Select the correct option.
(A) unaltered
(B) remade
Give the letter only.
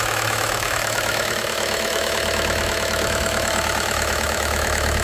B